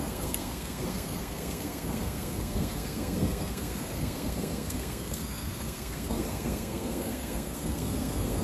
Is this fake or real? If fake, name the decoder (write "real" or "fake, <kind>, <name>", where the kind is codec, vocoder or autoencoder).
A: fake, codec, SNAC